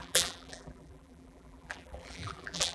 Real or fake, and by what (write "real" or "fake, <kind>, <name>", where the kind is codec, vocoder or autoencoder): fake, vocoder, BigVGAN v2